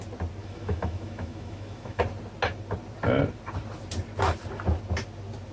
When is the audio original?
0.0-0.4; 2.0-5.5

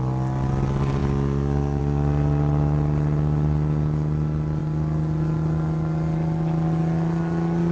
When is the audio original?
0.0-7.7

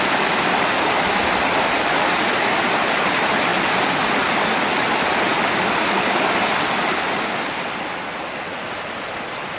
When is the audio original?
0.0-9.6

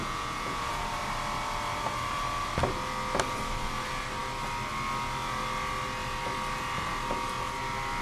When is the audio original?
0.8-8.0

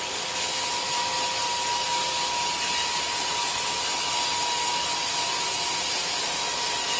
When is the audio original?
0.0-7.0

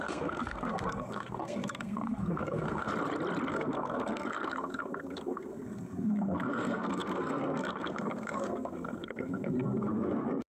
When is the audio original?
2.9-3.5

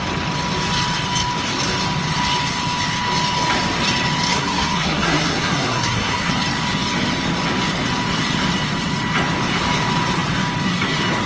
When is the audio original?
0.0-4.3; 6.3-11.3

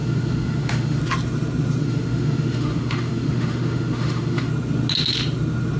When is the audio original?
1.0-1.8; 4.5-5.8